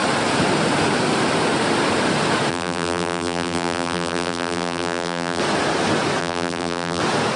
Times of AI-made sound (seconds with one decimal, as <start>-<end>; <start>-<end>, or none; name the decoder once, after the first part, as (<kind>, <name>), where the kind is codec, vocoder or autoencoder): 2.5-5.4 (vocoder, BigVGAN v2); 6.2-7.0